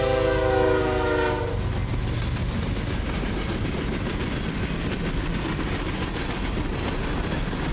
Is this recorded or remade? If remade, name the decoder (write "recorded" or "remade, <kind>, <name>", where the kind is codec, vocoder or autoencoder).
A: recorded